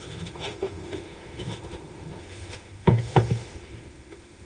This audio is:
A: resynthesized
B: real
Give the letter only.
A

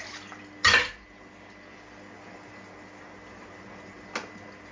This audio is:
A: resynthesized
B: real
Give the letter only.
B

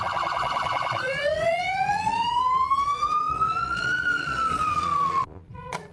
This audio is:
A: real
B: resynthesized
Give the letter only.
B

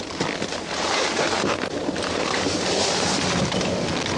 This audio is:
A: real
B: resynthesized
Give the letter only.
B